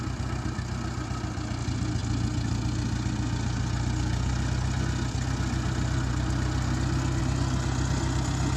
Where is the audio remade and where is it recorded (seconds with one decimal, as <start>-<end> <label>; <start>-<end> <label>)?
0.0-8.6 recorded